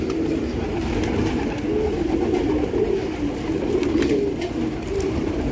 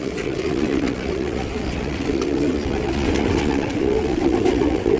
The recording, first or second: first